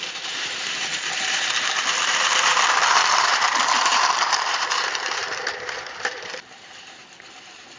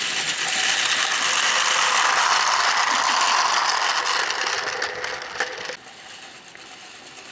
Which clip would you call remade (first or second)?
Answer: first